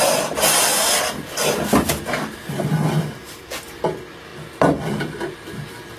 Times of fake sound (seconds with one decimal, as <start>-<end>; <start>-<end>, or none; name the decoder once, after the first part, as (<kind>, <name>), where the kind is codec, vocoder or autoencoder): 0.7-3.4 (vocoder, BigVGAN v2)